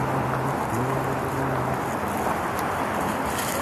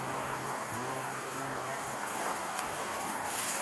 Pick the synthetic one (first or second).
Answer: second